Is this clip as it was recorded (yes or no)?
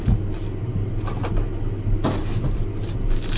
yes